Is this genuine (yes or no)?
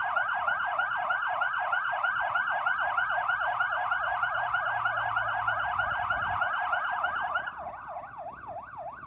yes